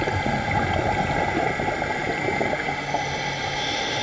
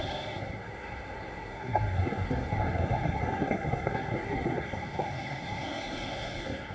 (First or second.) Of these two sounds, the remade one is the second